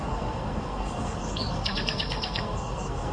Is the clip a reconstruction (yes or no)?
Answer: yes